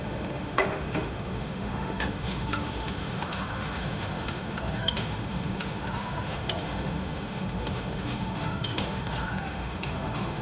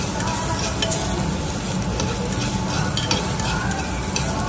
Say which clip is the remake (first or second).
first